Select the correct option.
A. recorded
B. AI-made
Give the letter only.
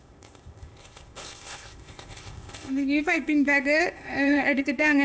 B